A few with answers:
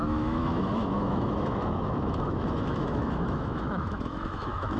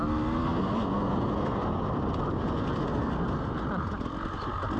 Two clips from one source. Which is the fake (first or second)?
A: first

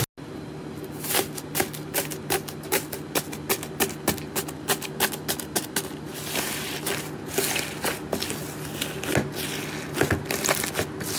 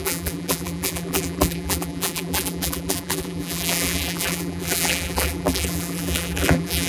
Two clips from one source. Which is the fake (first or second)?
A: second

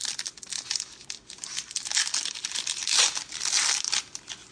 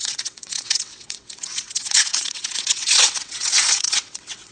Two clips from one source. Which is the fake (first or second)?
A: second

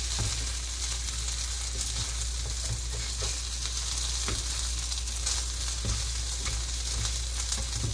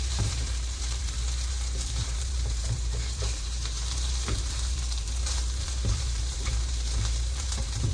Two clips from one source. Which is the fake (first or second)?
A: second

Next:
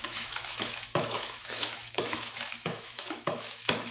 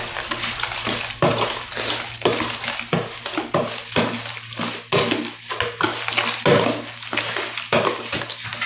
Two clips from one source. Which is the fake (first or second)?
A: first